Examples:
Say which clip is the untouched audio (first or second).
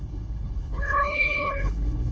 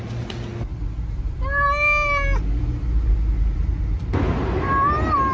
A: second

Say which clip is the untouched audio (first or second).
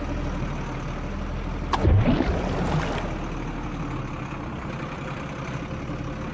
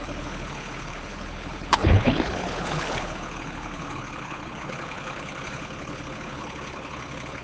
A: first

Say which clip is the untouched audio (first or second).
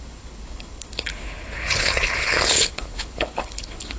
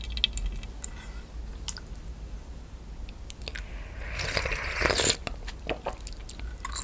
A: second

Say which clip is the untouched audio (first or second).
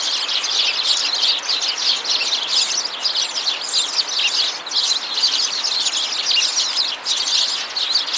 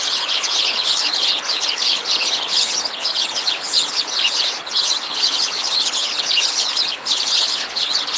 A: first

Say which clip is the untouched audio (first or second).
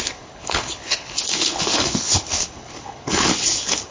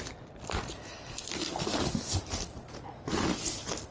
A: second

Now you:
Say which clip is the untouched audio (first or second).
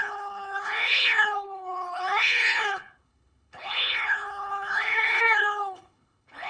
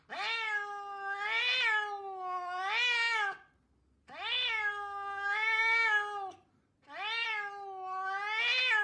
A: second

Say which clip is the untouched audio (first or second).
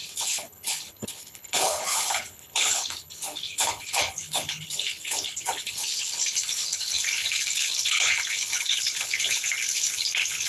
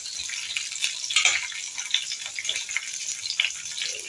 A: second